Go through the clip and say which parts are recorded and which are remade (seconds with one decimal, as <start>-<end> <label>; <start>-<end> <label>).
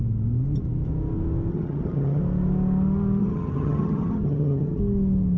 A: 0.0-1.5 recorded; 1.5-2.2 remade; 2.2-3.2 recorded; 3.2-4.8 remade; 4.8-5.4 recorded